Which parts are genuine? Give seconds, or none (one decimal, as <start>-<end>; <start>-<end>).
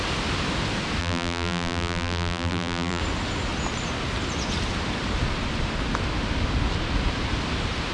0.0-1.0; 3.0-7.9